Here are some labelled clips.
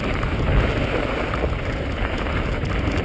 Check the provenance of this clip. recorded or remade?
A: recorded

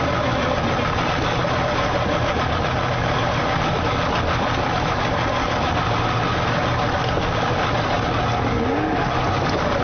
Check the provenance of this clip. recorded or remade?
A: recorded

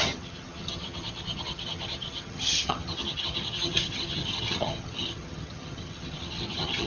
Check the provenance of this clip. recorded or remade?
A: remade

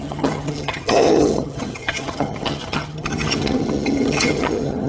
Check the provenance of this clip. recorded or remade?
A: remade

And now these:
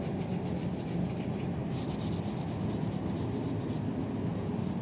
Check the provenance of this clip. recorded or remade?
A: recorded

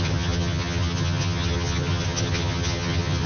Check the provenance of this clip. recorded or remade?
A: remade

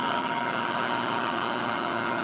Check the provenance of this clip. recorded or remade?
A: remade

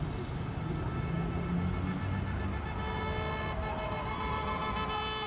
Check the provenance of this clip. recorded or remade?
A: recorded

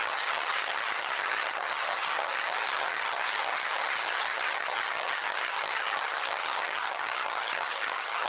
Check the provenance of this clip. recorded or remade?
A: remade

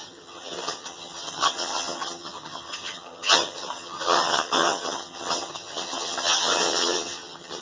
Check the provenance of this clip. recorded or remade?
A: remade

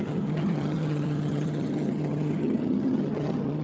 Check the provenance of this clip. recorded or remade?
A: remade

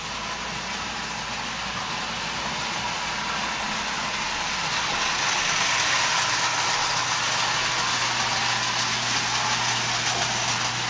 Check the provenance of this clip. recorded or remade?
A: recorded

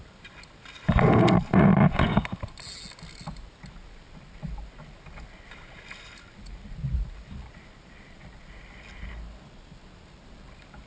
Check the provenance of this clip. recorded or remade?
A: recorded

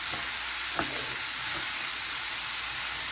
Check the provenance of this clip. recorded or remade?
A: recorded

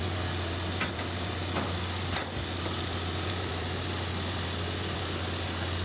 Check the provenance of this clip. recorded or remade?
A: recorded